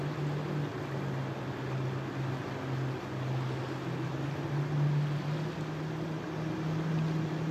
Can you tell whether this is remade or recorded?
recorded